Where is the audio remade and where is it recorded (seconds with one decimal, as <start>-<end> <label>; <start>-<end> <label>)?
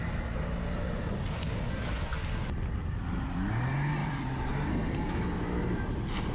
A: 0.0-4.0 recorded; 4.0-4.5 remade; 4.5-6.3 recorded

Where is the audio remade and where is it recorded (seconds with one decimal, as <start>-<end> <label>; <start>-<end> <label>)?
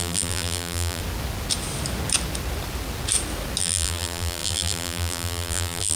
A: 0.0-1.0 remade; 1.0-3.6 recorded; 3.6-6.0 remade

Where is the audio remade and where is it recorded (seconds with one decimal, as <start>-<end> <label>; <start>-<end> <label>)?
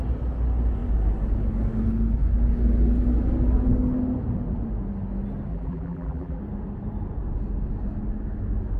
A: 0.0-5.5 recorded; 5.5-6.4 remade; 6.4-8.8 recorded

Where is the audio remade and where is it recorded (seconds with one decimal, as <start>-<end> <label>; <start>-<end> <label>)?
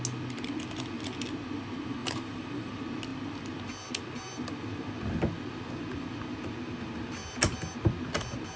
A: 0.0-2.0 recorded; 2.0-2.7 remade; 2.7-8.6 recorded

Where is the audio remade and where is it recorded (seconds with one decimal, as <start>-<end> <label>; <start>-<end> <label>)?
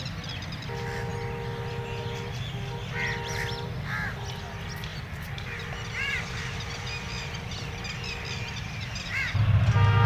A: 0.0-4.9 recorded; 4.9-9.2 remade; 9.2-10.1 recorded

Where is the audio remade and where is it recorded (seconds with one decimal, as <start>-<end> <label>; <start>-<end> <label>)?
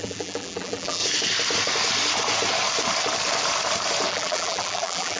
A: 0.0-1.0 remade; 1.0-4.1 recorded; 4.1-5.2 remade